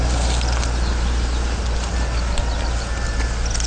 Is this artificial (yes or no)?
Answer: no